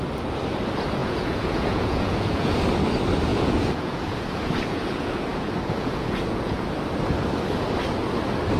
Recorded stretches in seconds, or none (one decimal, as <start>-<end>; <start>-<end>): 0.0-1.0; 2.6-3.3; 6.6-8.6